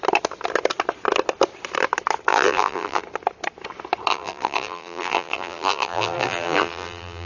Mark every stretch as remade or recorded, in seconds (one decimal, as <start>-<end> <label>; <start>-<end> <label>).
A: 0.0-2.3 recorded; 2.3-3.0 remade; 3.0-4.1 recorded; 4.1-7.3 remade